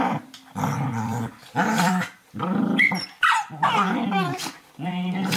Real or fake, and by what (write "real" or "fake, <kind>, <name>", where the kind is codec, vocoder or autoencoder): fake, vocoder, BigVGAN v2